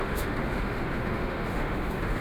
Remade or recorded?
remade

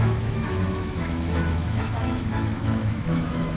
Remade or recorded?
remade